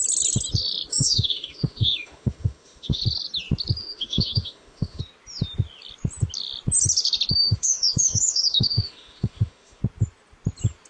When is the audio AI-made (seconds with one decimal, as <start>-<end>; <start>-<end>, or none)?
0.9-3.0; 3.8-5.0; 7.4-9.8